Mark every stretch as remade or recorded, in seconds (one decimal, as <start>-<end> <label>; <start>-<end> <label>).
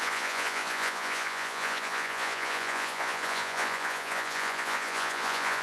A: 0.0-5.6 remade